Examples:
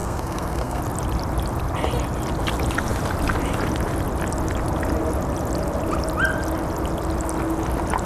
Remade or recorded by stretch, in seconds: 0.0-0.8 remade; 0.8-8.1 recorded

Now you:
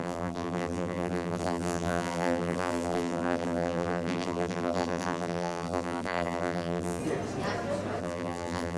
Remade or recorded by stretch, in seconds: 0.0-7.0 remade; 7.0-8.0 recorded; 8.0-8.8 remade

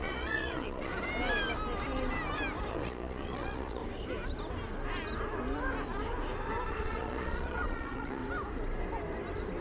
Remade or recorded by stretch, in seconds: 0.0-0.9 remade; 0.9-2.7 recorded; 2.7-3.8 remade; 3.8-6.7 recorded; 6.7-8.2 remade; 8.2-9.6 recorded